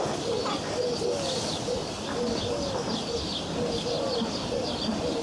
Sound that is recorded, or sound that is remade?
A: recorded